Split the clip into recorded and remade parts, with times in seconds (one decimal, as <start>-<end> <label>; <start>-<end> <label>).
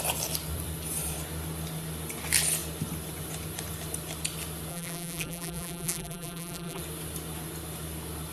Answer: 0.0-4.7 recorded; 4.7-6.8 remade; 6.8-8.3 recorded